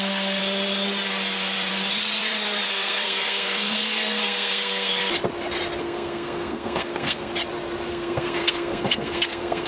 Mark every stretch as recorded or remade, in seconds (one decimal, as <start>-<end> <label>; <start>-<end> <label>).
0.0-0.4 remade; 0.4-2.7 recorded; 2.7-4.9 remade; 4.9-5.8 recorded; 5.8-7.3 remade; 7.3-7.9 recorded; 7.9-9.7 remade